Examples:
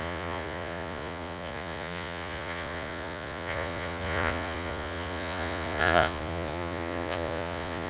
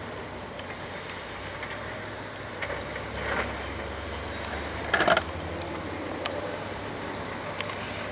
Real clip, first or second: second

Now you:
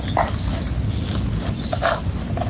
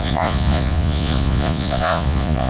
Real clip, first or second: first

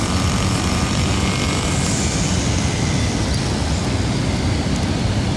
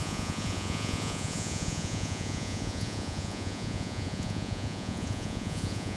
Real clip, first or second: first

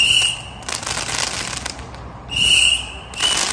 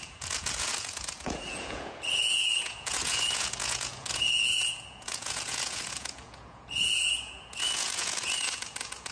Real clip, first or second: first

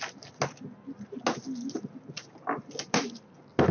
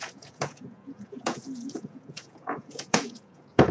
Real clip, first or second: first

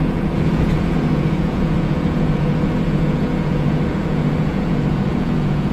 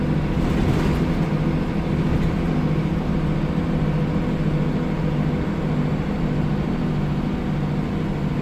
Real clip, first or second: second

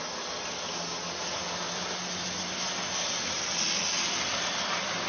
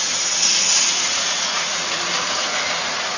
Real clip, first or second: first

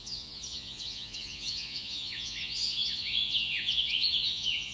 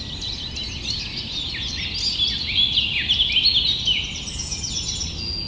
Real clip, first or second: second